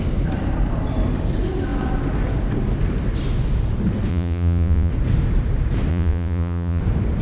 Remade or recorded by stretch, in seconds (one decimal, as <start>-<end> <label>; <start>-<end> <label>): 0.0-4.1 recorded; 4.1-4.9 remade; 4.9-5.9 recorded; 5.9-6.8 remade; 6.8-7.2 recorded